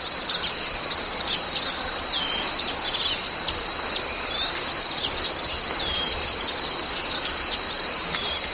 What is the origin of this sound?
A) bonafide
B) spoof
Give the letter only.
A